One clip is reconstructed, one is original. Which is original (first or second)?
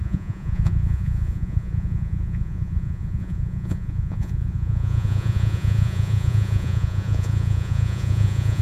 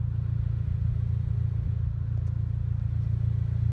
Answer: second